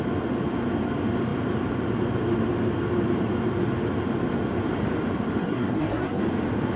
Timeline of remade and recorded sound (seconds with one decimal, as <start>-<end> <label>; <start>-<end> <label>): 0.0-5.4 recorded; 5.4-6.2 remade; 6.2-6.8 recorded